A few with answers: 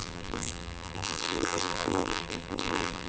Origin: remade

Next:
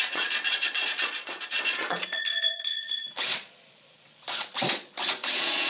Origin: remade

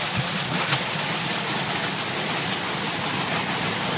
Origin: recorded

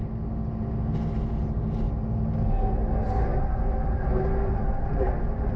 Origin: recorded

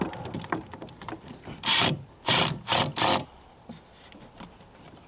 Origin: recorded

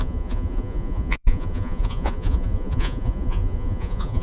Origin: remade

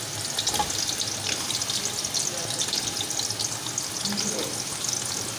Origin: recorded